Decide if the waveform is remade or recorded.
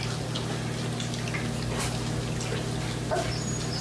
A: recorded